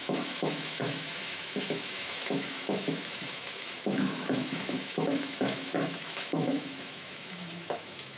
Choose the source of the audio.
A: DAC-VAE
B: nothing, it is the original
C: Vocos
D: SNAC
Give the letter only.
A